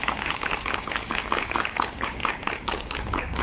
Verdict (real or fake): fake